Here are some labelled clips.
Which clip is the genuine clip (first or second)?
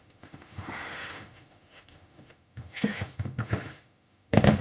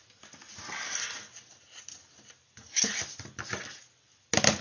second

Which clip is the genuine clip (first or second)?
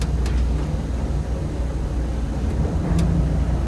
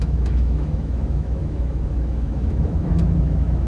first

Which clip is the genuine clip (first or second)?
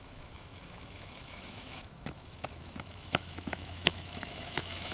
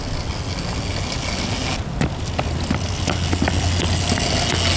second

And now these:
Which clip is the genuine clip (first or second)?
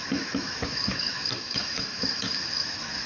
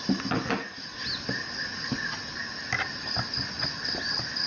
second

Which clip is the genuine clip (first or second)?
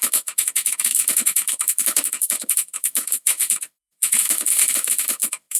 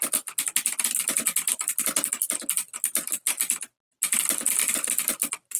second